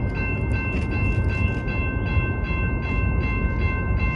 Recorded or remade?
recorded